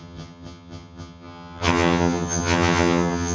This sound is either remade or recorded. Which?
remade